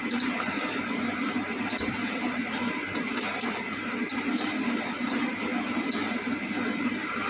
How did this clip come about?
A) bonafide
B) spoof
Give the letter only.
B